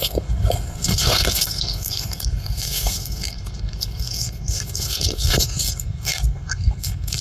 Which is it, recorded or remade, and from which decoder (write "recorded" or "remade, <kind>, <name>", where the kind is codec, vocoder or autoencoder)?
remade, codec, SNAC